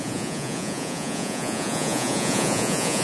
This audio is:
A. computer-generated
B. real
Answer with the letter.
A